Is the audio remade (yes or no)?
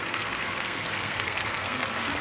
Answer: yes